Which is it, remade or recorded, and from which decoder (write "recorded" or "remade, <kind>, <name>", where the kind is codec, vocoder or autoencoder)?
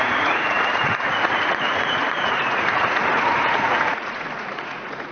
remade, vocoder, Vocos